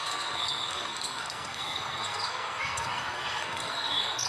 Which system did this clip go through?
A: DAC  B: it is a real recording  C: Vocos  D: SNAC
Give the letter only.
D